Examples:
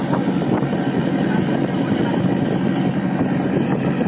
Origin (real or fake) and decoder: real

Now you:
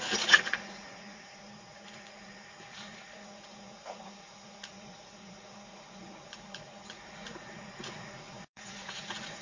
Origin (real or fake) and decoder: fake, vocoder, Vocos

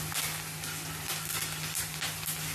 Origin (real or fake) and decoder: real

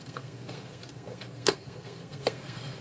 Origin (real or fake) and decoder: fake, codec, SNAC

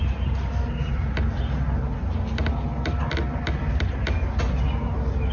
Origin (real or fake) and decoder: real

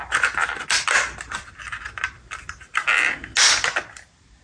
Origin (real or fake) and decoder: real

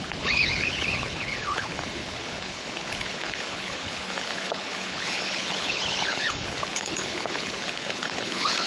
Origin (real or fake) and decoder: fake, codec, HILCodec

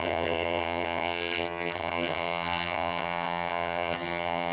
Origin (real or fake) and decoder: fake, vocoder, HiFi-GAN